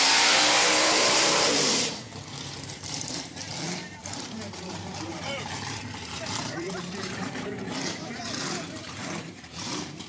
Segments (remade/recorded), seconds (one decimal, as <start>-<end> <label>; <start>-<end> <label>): 0.0-3.5 remade; 3.5-4.0 recorded; 4.0-10.1 remade